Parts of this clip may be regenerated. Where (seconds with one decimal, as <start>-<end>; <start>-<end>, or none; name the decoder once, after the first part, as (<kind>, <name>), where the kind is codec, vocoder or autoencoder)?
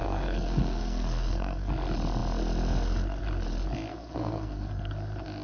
0.0-1.7 (codec, SNAC); 3.9-4.9